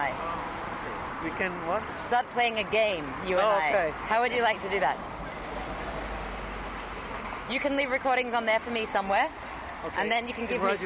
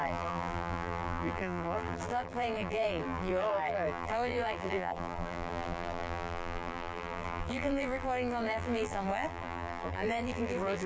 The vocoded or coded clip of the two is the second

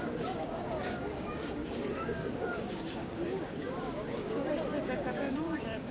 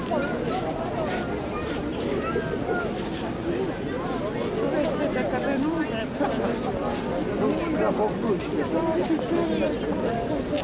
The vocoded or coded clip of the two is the first